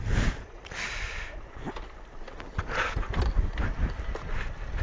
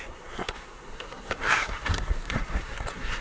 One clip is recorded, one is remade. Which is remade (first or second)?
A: second